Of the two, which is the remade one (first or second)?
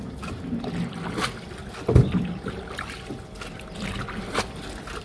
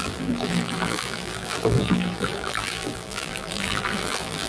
second